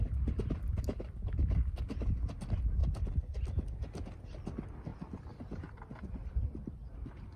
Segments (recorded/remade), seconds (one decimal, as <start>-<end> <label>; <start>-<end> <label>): 0.0-2.8 recorded; 2.8-3.6 remade; 3.6-4.9 recorded; 4.9-7.4 remade